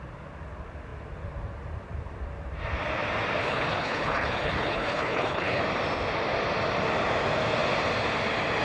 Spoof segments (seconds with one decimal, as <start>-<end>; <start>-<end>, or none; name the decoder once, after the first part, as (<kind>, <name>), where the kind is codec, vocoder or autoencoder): 3.4-5.6 (codec, HILCodec)